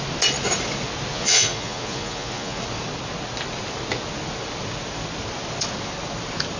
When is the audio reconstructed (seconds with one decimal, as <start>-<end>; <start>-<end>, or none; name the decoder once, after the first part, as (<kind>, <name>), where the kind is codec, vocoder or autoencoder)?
1.1-2.6 (vocoder, Vocos)

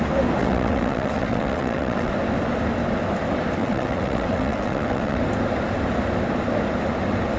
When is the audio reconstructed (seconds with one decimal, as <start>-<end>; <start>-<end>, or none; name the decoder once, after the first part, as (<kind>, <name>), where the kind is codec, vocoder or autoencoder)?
0.4-2.1 (vocoder, WaveNeXt); 3.6-5.2

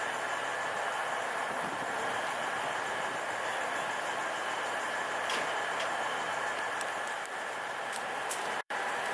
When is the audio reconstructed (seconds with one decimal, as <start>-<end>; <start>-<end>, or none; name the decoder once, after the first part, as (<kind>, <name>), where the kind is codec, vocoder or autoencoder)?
0.0-0.5 (vocoder, BigVGAN v2); 1.1-3.5; 4.4-9.1

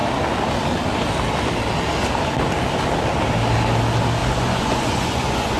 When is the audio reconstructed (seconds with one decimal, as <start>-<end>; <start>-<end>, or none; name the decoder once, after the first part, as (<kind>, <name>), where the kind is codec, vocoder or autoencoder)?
4.2-5.6 (vocoder, Vocos)

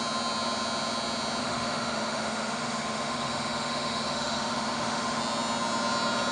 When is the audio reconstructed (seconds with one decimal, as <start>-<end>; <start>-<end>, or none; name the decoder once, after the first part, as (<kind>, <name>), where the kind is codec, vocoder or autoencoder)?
1.4-5.2 (autoencoder, DAC-VAE)

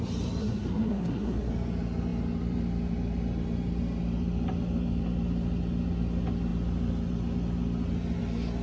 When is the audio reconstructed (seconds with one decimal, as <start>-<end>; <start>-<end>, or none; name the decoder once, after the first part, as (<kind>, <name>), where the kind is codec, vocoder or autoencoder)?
0.4-1.5 (codec, SNAC)

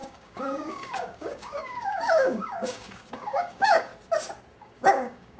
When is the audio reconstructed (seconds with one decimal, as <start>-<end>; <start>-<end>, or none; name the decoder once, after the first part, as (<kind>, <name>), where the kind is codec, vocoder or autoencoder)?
0.0-3.9 (codec, DAC); 4.6-5.4

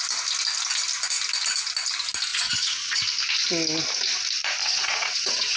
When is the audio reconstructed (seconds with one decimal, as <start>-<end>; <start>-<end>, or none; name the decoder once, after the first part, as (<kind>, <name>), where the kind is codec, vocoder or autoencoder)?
2.3-3.0 (vocoder, WaveNeXt); 4.6-5.6